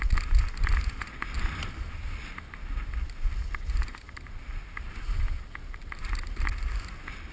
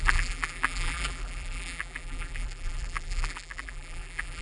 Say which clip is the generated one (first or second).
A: second